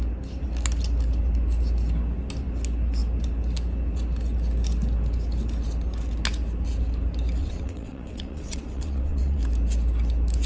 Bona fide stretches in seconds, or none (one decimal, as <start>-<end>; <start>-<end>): 0.0-7.4; 9.4-10.5